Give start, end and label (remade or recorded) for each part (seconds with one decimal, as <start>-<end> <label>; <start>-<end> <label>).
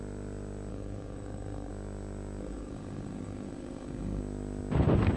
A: 0.0-0.7 recorded; 0.7-1.7 remade; 1.7-2.4 recorded; 2.4-4.2 remade; 4.2-5.2 recorded